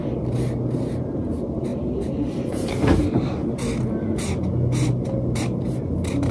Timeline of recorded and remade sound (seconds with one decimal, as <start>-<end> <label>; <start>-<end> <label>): 0.0-6.3 recorded